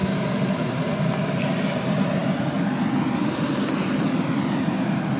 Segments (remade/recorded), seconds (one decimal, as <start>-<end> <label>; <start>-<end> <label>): 0.0-5.2 recorded